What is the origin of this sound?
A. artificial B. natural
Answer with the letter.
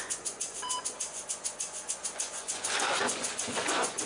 A